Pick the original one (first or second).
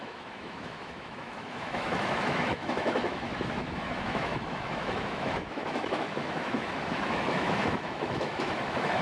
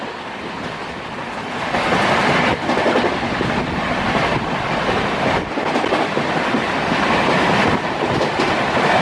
second